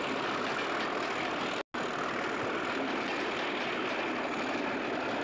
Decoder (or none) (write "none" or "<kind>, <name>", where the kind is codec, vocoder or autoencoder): none